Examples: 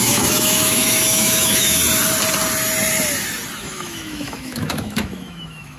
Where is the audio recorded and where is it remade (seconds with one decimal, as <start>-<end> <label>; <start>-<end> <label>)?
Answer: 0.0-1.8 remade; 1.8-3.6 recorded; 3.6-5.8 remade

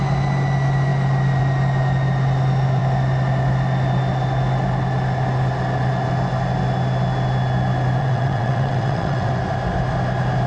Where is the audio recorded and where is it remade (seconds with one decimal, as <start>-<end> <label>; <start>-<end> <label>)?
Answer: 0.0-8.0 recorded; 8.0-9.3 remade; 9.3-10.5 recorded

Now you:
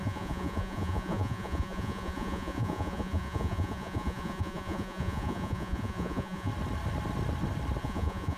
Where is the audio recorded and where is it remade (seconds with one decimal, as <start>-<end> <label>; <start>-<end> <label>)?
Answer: 0.0-6.5 remade; 6.5-7.8 recorded; 7.8-8.4 remade

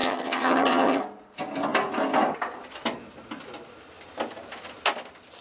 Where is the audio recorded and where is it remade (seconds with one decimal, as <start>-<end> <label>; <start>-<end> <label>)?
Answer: 0.0-1.0 remade; 1.0-5.4 recorded